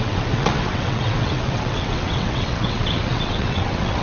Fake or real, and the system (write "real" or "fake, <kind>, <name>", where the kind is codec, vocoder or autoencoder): fake, vocoder, WaveNeXt